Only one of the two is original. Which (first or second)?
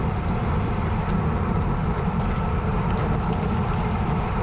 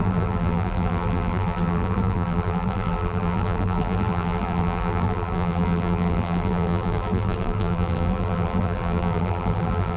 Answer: first